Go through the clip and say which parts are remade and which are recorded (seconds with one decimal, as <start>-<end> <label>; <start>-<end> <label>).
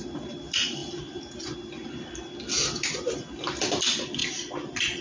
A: 0.0-5.0 recorded